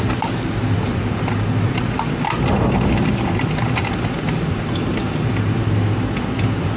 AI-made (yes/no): no